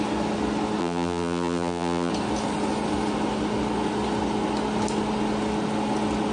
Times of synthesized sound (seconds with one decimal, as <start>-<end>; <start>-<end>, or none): 0.8-2.1

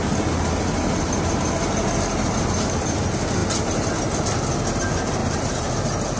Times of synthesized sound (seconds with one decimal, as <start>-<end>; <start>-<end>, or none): 3.4-3.9; 5.2-5.7

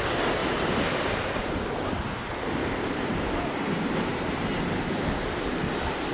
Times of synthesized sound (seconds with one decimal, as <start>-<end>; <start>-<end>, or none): 2.6-4.5